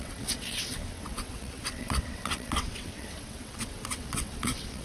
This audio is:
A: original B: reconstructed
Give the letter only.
B